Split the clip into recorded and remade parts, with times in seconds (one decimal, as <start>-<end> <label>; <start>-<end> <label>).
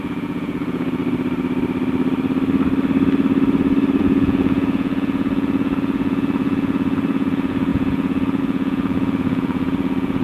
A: 0.0-1.0 remade; 1.0-4.0 recorded; 4.0-10.2 remade